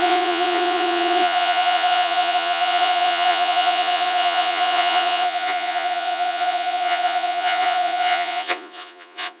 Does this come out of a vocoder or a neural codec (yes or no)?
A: yes